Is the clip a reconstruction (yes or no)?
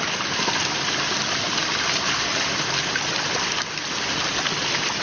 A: no